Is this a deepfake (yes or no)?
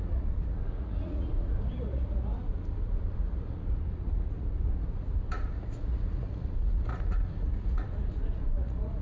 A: yes